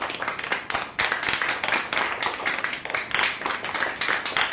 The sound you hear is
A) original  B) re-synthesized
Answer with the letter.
A